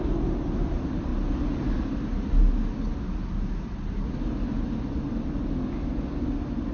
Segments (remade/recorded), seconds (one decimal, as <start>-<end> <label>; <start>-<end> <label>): 0.0-6.7 recorded